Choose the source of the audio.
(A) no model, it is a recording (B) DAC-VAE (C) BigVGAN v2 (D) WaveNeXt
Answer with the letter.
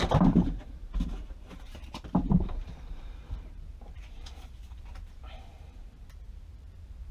C